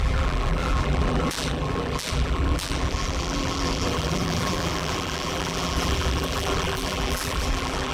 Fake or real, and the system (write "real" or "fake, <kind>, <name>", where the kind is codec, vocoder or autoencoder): fake, vocoder, BigVGAN v2